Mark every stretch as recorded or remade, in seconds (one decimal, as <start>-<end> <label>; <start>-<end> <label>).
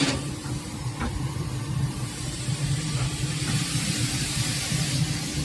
0.0-5.4 remade